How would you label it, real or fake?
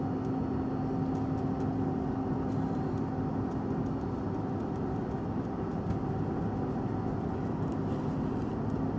real